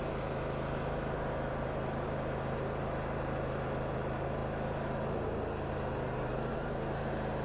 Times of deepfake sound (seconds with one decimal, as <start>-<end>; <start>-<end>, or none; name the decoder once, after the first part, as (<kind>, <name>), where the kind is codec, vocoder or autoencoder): none